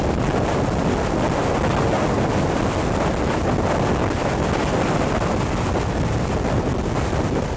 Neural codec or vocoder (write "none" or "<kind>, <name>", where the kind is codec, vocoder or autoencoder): none